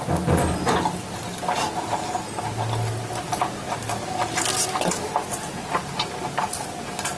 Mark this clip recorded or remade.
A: recorded